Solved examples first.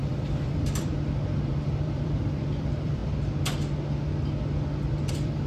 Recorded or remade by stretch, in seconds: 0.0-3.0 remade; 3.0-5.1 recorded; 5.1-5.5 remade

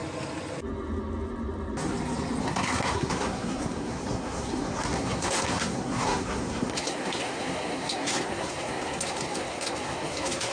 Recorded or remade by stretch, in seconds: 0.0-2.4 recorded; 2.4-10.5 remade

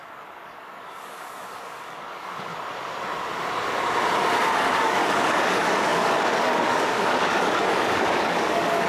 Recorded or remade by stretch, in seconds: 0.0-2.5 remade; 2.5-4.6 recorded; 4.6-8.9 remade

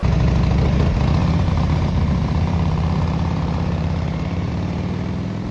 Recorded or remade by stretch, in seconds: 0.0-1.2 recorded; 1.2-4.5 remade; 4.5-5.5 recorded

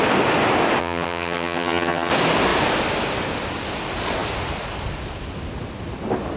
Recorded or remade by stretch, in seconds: 0.0-0.8 recorded; 0.8-2.1 remade; 2.1-6.4 recorded

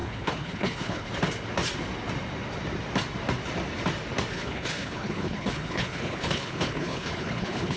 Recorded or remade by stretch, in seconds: 0.0-1.1 remade; 1.1-4.3 recorded; 4.3-7.8 remade

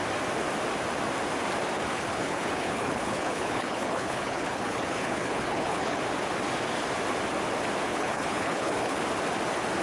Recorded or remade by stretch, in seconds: 0.0-1.9 recorded; 1.9-6.0 remade; 6.0-7.9 recorded; 7.9-9.0 remade; 9.0-9.8 recorded

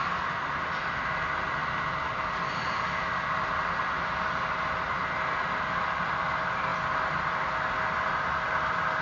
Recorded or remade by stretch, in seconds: 0.0-9.0 recorded